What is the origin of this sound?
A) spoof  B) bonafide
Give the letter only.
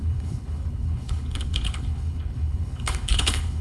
A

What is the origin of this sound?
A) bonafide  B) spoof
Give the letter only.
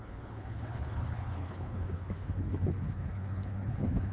B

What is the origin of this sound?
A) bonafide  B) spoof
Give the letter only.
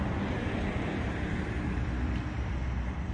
A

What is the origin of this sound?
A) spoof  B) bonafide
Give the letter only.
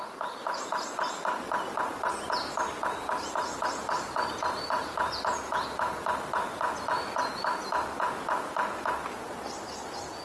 B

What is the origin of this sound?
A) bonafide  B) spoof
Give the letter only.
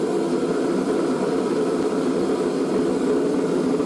A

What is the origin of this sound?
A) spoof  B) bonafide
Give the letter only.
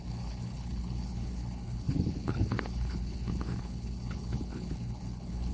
A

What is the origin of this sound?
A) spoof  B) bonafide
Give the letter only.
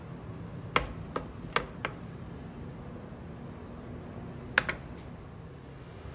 B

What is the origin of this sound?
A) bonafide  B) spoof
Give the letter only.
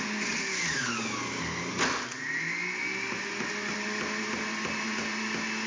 A